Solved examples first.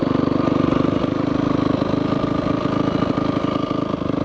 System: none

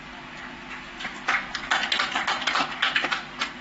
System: none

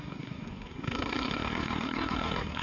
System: codec, SNAC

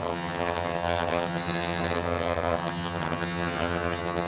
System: vocoder, HiFi-GAN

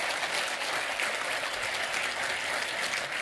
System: none